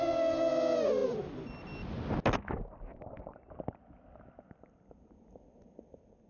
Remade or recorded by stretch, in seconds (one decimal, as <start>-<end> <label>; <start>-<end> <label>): 0.0-6.3 recorded